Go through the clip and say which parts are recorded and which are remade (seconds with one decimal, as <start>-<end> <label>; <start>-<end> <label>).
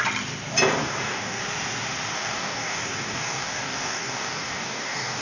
0.0-0.8 recorded; 0.8-1.4 remade; 1.4-2.1 recorded; 2.1-5.2 remade